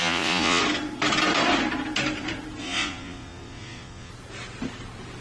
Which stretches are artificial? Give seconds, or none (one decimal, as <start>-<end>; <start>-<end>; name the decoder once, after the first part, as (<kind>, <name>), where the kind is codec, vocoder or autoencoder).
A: 0.0-0.6 (vocoder, Vocos); 2.6-4.1

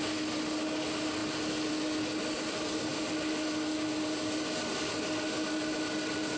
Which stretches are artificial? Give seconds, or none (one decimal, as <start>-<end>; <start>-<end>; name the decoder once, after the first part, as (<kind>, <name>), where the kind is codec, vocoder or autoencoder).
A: none

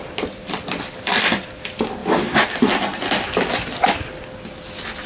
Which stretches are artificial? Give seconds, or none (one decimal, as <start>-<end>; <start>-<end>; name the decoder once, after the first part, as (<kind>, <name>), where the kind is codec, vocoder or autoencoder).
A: none